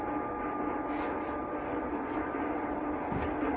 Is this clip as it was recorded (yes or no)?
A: yes